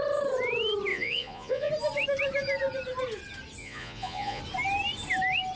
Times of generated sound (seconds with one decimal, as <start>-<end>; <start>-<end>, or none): 0.9-1.7; 3.6-4.4